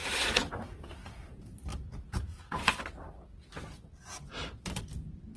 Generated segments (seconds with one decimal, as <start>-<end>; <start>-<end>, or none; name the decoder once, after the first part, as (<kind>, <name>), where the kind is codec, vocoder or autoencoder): 1.7-2.8 (vocoder, Vocos)

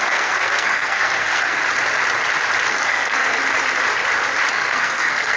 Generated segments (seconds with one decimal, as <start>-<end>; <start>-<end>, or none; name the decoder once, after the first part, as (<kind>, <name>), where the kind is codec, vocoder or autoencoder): 0.0-1.6 (codec, SNAC); 2.7-3.4; 4.5-5.4

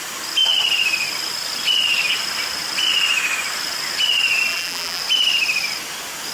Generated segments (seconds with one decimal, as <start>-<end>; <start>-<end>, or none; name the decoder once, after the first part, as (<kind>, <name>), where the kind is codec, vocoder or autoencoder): 4.5-5.0 (vocoder, BigVGAN v2)

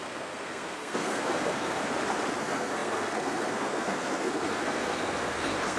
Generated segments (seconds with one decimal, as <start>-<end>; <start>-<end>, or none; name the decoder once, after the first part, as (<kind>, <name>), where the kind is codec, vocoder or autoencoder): 0.0-1.8 (codec, SNAC); 2.4-5.8

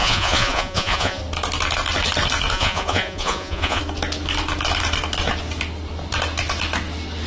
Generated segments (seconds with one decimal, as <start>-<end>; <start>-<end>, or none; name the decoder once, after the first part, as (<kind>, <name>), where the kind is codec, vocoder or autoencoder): 0.0-1.2 (vocoder, Vocos); 2.5-3.8